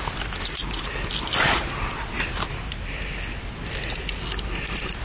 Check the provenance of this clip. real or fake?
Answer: real